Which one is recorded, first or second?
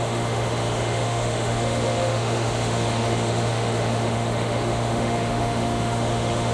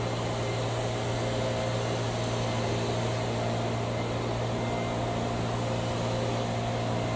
second